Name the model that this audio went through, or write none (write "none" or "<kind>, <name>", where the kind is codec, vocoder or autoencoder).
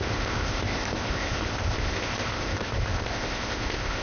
codec, ZipCodec